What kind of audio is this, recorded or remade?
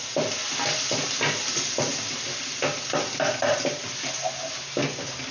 recorded